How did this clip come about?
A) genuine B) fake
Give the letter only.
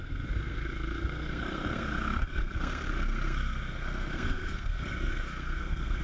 B